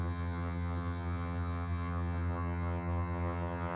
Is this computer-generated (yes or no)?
yes